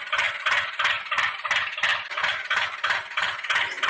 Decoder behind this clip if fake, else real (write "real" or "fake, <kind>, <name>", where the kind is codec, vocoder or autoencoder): real